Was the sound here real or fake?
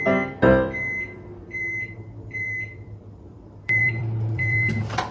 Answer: fake